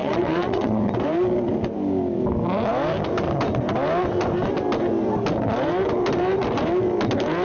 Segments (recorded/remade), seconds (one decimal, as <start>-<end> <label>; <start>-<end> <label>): 0.0-0.9 remade; 0.9-7.4 recorded